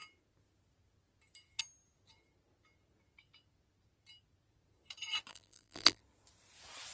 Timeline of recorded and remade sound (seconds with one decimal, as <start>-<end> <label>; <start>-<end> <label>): 0.0-5.3 recorded; 5.3-6.0 remade; 6.0-6.9 recorded